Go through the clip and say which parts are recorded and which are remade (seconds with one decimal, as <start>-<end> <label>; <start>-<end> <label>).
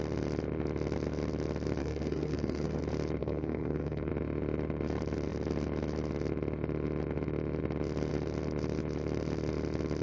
0.0-1.8 recorded; 1.8-2.8 remade; 2.8-3.2 recorded; 3.2-4.1 remade; 4.1-10.0 recorded